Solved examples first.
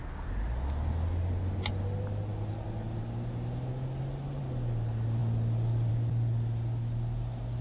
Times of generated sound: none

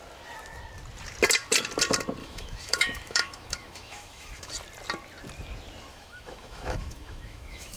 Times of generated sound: 2.2-4.5 (autoencoder, DAC-VAE); 5.9-7.8

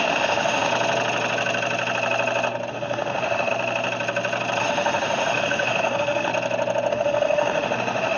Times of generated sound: 0.0-0.7 (autoencoder, DAC-VAE); 2.7-3.5; 4.6-6.3; 6.9-8.2

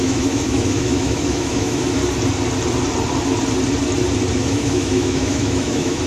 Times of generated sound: 0.0-2.0 (autoencoder, DAC-VAE); 4.3-6.1

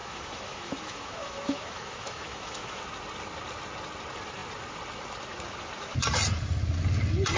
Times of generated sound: 0.0-2.8 (autoencoder, DAC-VAE)

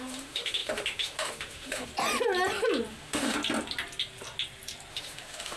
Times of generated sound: 0.0-1.9 (autoencoder, DAC-VAE); 2.9-3.4; 4.9-5.6

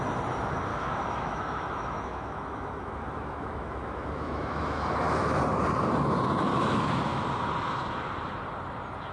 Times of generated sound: 0.7-5.4 (autoencoder, DAC-VAE); 6.5-7.2